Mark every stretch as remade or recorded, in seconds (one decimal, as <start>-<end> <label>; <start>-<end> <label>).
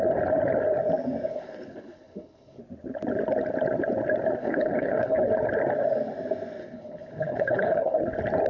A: 0.0-1.3 recorded; 1.3-2.6 remade; 2.6-4.4 recorded; 4.4-5.3 remade; 5.3-6.6 recorded; 6.6-8.0 remade; 8.0-8.5 recorded